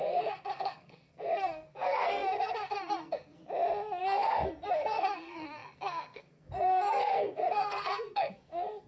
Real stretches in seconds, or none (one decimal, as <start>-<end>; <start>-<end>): 3.4-4.0